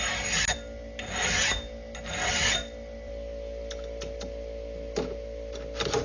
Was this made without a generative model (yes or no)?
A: yes